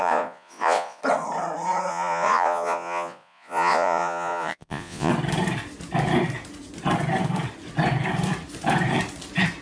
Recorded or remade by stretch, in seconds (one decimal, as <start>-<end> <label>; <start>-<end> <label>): 0.0-1.0 remade; 1.0-1.9 recorded; 1.9-5.1 remade; 5.1-9.6 recorded